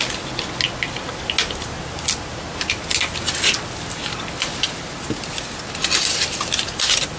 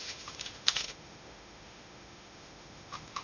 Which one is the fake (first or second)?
second